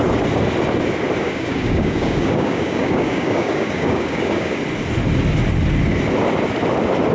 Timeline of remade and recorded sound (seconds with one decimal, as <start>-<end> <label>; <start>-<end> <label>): 0.0-1.2 recorded; 1.2-4.6 remade; 4.6-7.1 recorded